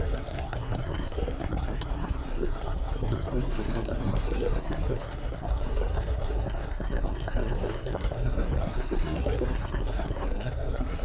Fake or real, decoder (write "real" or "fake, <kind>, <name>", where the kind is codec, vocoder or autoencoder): fake, codec, SNAC